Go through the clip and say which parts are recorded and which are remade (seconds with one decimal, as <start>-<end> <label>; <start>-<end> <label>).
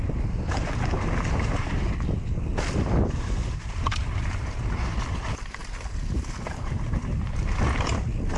0.0-0.5 recorded; 0.5-1.7 remade; 1.7-2.5 recorded; 2.5-4.2 remade; 4.2-5.6 recorded; 5.6-7.6 remade; 7.6-8.4 recorded